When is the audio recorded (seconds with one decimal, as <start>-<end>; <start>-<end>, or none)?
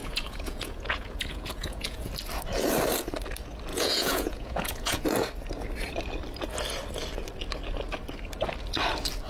2.1-3.7; 5.0-9.3